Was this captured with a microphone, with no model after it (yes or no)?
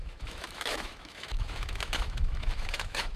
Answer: no